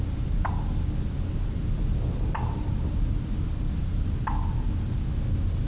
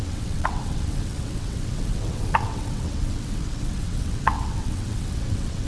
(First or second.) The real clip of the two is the first